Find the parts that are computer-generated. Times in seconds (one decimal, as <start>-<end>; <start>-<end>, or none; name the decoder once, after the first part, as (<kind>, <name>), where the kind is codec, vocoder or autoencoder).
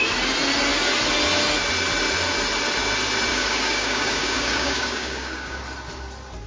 3.3-5.6 (codec, DAC)